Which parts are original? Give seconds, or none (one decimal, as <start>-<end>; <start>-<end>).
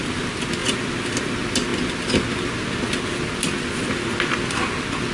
0.0-5.1